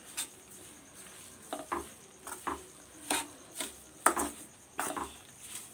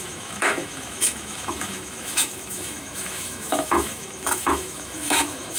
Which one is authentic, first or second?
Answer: first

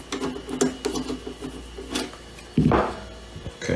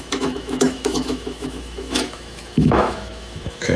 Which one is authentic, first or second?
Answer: first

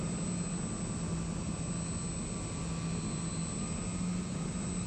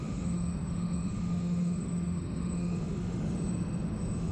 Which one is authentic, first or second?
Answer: first